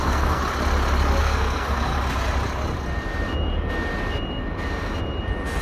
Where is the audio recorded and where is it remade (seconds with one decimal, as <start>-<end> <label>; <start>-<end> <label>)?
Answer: 0.0-0.4 remade; 0.4-1.2 recorded; 1.2-1.9 remade; 1.9-5.6 recorded